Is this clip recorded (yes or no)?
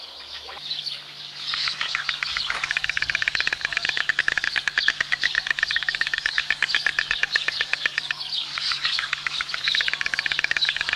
no